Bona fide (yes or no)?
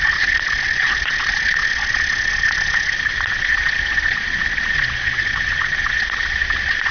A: no